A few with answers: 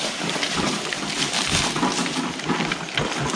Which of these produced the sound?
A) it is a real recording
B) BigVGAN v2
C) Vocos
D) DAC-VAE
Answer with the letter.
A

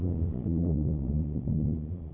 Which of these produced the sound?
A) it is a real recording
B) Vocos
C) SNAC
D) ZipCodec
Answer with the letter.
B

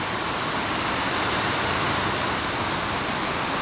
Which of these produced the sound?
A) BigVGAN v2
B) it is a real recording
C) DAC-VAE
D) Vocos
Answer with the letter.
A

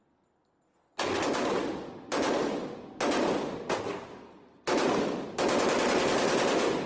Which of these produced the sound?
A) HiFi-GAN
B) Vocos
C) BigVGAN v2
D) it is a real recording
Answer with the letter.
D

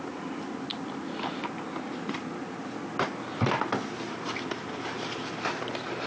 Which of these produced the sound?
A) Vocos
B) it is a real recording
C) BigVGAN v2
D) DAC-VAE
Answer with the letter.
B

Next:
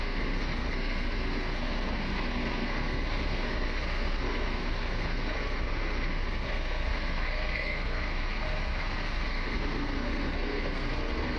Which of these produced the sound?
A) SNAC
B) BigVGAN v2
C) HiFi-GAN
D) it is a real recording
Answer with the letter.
A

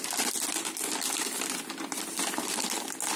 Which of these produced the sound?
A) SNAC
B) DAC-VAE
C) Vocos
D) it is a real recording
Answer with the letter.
D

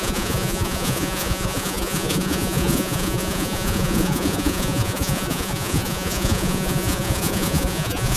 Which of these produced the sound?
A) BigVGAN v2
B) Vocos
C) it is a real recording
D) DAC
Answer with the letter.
B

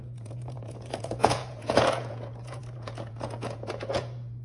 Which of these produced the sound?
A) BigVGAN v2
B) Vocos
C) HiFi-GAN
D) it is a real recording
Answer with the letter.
B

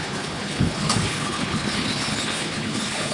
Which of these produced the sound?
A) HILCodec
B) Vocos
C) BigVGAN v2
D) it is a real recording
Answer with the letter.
A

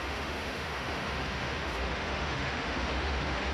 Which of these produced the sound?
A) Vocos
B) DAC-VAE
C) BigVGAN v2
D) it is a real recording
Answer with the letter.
B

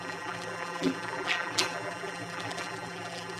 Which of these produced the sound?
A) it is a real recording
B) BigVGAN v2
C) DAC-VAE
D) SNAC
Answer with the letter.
B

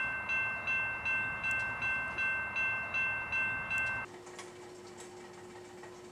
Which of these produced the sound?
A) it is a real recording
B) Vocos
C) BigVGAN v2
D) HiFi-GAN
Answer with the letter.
A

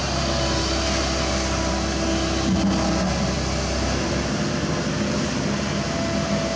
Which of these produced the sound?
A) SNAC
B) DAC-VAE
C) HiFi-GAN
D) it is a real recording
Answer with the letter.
D